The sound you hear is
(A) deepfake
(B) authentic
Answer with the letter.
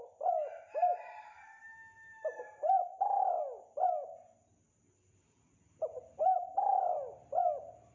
B